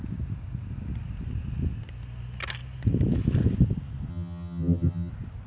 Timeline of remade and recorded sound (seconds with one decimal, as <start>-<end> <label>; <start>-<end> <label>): 0.0-4.1 recorded; 4.1-5.1 remade; 5.1-5.5 recorded

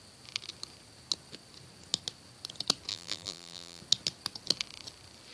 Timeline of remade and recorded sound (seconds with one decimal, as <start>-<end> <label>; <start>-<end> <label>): 0.0-2.9 recorded; 2.9-3.8 remade; 3.8-5.3 recorded

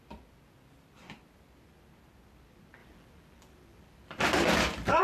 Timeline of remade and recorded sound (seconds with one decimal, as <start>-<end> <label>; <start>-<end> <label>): 0.0-2.8 recorded; 2.8-5.0 remade

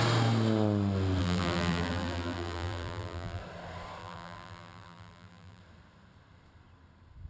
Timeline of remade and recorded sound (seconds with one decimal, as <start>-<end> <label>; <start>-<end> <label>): 0.0-1.2 recorded; 1.2-3.4 remade; 3.4-4.0 recorded; 4.0-5.6 remade; 5.6-7.3 recorded

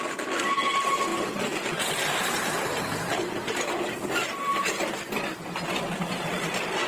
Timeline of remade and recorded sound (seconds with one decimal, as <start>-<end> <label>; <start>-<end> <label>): 0.0-1.1 recorded; 1.1-3.6 remade; 3.6-6.9 recorded

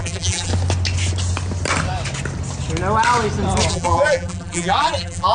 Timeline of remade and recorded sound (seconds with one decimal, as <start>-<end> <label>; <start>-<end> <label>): 0.0-0.5 remade; 0.5-3.7 recorded; 3.7-5.3 remade

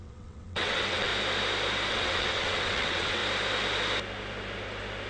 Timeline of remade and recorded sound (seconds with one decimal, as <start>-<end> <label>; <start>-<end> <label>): 0.0-1.1 remade; 1.1-1.9 recorded; 1.9-3.2 remade; 3.2-5.1 recorded